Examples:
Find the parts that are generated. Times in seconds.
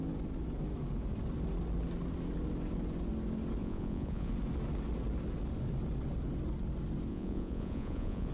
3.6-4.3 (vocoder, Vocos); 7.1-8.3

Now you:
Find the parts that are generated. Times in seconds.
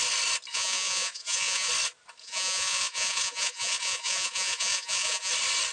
0.5-1.7 (vocoder, Vocos); 2.2-5.3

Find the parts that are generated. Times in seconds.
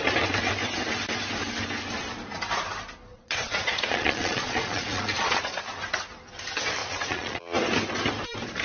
3.1-5.6 (vocoder, Vocos); 6.8-7.4